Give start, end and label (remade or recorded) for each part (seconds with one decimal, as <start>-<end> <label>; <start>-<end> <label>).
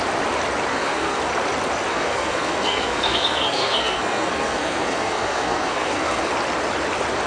0.0-0.7 recorded; 0.7-1.2 remade; 1.2-1.9 recorded; 1.9-6.3 remade; 6.3-7.3 recorded